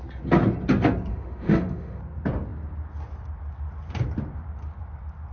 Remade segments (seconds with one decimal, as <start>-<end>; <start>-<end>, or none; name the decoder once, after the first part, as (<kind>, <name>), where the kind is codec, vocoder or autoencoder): 1.1-2.0 (autoencoder, DAC-VAE)

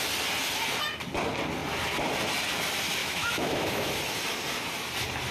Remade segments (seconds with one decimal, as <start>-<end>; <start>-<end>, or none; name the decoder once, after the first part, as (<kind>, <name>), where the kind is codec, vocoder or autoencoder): 3.0-3.9 (autoencoder, DAC-VAE)

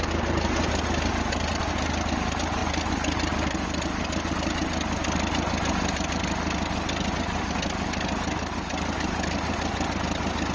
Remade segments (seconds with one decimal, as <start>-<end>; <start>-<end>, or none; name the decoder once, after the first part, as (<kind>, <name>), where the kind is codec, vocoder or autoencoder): none

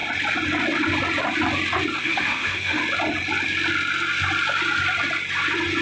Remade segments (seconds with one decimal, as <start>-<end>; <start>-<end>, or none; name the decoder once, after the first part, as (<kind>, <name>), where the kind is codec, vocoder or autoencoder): 2.0-2.8 (autoencoder, DAC-VAE)

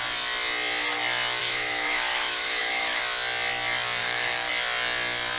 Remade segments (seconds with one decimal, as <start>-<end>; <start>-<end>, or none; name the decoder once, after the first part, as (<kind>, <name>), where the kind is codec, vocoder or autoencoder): 1.4-3.0 (autoencoder, DAC-VAE); 4.0-4.5

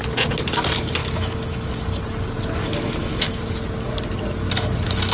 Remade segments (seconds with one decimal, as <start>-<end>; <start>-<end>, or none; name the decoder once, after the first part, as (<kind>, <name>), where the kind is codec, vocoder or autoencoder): 1.0-1.6 (autoencoder, DAC-VAE); 2.6-3.4